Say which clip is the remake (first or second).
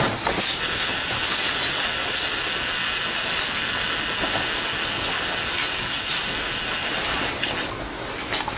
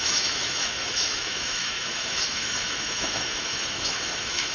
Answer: second